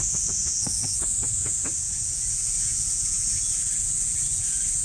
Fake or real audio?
fake